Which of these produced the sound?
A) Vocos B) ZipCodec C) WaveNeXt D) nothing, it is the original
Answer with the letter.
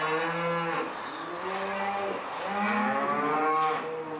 D